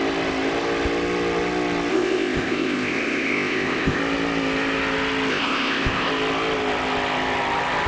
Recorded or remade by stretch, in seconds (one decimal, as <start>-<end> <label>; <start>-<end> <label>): 0.0-1.9 recorded; 1.9-4.0 remade; 4.0-5.3 recorded; 5.3-6.1 remade; 6.1-7.9 recorded